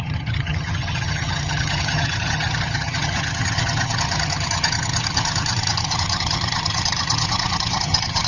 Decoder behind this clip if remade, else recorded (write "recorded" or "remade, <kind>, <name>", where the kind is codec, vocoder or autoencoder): remade, vocoder, HiFi-GAN